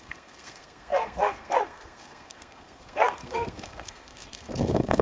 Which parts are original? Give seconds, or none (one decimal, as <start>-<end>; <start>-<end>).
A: none